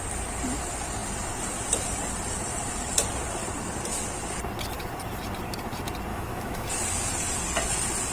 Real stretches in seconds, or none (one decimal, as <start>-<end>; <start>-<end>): 0.0-6.1; 6.7-8.1

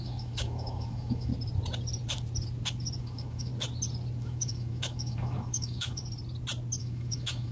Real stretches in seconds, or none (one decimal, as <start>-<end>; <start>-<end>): 1.3-3.0; 3.5-4.2; 6.0-6.8

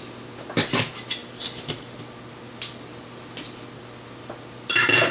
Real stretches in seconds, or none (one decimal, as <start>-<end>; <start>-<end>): 0.0-5.1

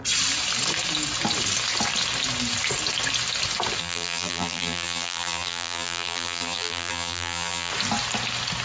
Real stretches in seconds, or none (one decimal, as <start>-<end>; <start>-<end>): 0.0-3.8; 7.7-8.6

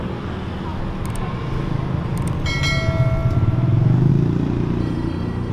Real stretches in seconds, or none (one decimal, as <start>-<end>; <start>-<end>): 0.0-4.8

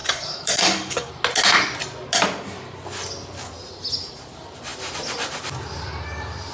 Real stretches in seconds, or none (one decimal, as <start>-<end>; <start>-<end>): 1.1-6.5

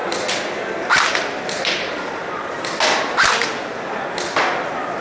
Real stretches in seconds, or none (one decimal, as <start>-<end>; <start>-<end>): 0.0-5.0